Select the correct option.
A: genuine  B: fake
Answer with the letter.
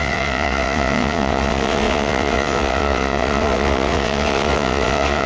B